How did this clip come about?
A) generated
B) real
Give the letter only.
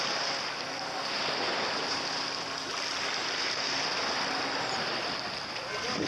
B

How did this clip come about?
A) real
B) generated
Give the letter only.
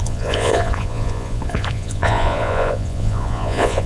B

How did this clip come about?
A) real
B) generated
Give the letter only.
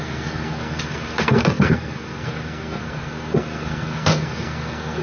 B